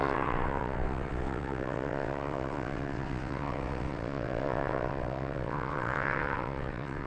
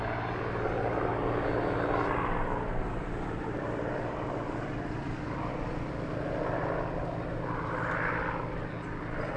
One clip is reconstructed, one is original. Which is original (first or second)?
second